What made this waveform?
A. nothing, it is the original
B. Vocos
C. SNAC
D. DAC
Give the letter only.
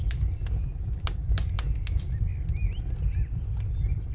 A